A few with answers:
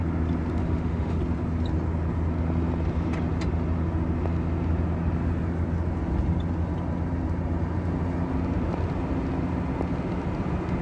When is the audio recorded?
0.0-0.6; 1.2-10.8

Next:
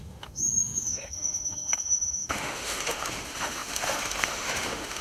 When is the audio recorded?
none

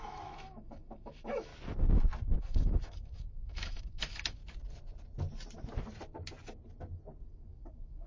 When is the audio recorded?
1.5-2.4; 4.4-7.3